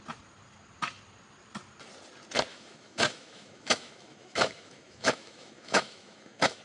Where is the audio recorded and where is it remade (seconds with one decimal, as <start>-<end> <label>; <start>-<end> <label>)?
0.0-2.5 recorded; 2.5-6.6 remade